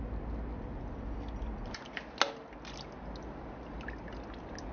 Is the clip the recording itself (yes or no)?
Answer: yes